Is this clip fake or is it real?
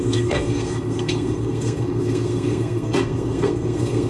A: fake